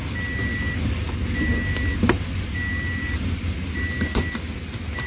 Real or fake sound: real